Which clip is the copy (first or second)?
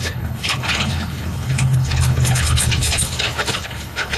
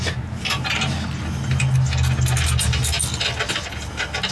first